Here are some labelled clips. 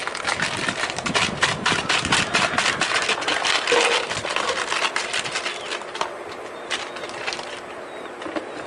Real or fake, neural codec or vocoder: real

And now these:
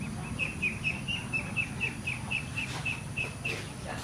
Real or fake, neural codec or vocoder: real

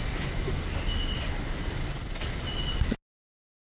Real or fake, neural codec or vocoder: real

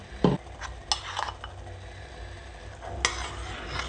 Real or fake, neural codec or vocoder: real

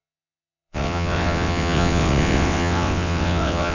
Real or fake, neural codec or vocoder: fake, vocoder, WaveNeXt